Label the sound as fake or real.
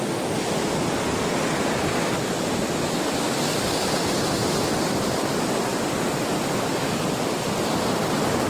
real